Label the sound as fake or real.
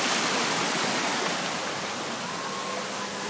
real